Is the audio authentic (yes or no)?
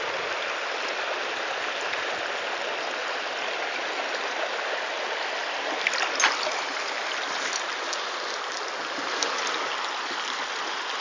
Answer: yes